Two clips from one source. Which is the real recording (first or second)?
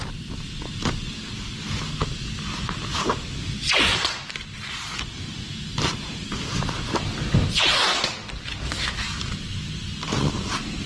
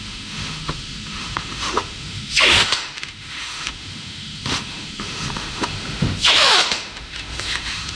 first